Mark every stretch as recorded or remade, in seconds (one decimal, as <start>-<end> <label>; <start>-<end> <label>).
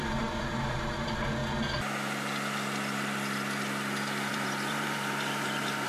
0.0-1.4 remade; 1.4-4.3 recorded; 4.3-5.9 remade